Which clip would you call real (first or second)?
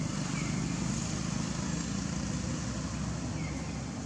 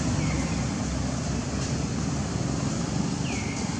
first